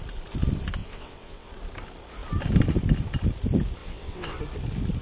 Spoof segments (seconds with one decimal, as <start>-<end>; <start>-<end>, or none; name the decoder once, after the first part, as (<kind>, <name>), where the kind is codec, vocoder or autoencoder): 0.8-1.5 (vocoder, WaveNeXt); 3.8-4.4